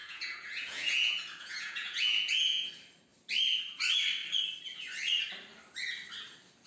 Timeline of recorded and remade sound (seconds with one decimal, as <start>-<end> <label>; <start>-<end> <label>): 0.0-2.7 remade; 2.7-6.7 recorded